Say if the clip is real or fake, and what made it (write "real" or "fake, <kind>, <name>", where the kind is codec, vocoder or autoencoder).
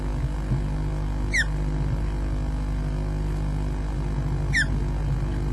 real